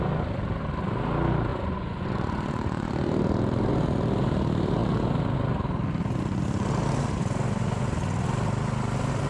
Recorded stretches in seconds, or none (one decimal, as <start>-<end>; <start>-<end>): 0.0-1.5; 2.9-9.3